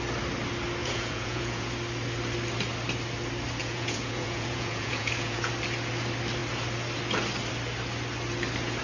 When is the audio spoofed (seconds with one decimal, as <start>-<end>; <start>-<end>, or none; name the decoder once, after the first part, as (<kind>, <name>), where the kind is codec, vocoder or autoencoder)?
0.8-1.7 (vocoder, Vocos); 3.6-5.5